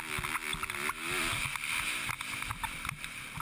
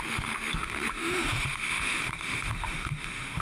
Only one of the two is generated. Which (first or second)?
second